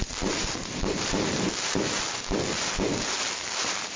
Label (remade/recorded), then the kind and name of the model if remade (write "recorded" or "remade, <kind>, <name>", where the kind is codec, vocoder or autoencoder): recorded